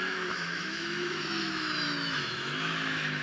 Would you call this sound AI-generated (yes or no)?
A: yes